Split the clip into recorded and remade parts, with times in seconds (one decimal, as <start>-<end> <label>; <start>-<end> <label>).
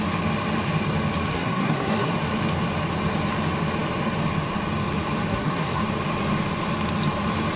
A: 0.0-1.3 recorded; 1.3-2.1 remade; 2.1-5.3 recorded; 5.3-5.8 remade; 5.8-7.6 recorded